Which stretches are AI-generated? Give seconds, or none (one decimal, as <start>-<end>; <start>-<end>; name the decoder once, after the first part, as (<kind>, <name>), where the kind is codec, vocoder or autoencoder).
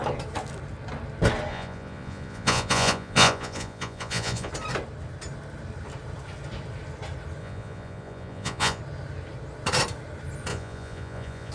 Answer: 1.5-4.5 (vocoder, Vocos); 7.4-8.8; 10.5-11.5